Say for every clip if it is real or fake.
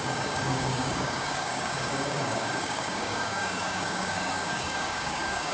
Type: fake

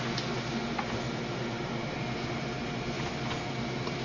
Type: real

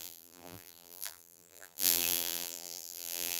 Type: fake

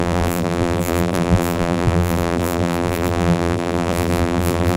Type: fake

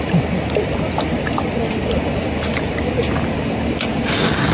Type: real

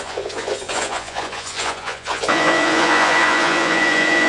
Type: fake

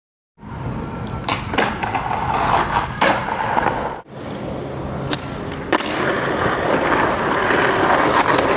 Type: real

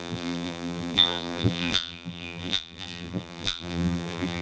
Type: fake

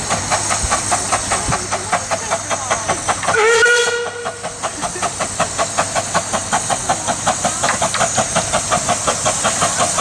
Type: real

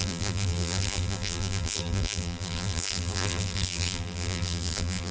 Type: fake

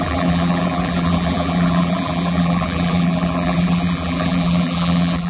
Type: fake